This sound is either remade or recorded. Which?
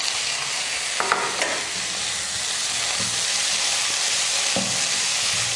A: recorded